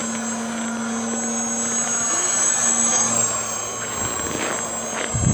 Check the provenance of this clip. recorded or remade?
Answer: recorded